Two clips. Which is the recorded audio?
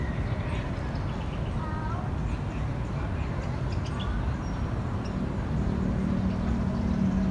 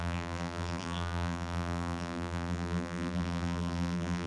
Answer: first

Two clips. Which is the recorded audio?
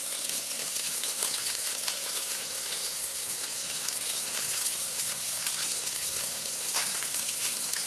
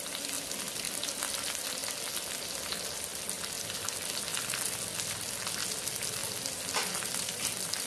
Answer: second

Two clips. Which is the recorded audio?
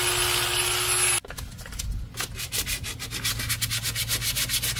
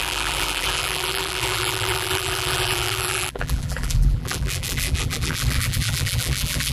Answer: first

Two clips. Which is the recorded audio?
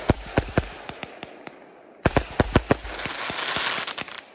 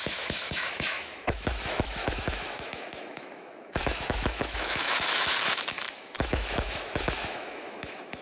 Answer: first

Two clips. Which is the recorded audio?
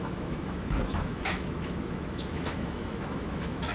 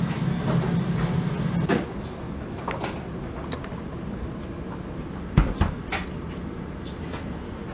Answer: second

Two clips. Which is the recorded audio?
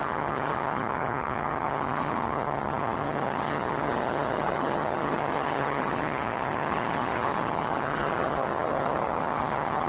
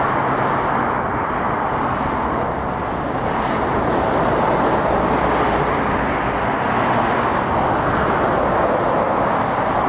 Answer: second